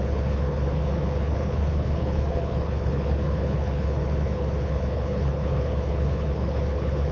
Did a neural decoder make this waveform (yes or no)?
yes